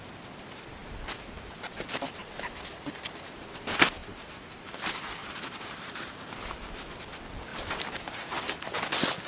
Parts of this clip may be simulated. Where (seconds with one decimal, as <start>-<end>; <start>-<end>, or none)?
4.0-4.7; 5.2-6.1; 7.5-8.8